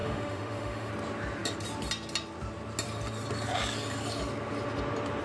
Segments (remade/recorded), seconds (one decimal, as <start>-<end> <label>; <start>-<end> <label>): 0.0-0.9 remade; 0.9-5.2 recorded